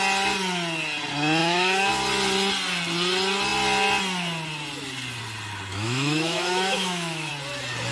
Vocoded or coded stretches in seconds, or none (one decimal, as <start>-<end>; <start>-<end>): 1.4-1.9; 5.7-7.3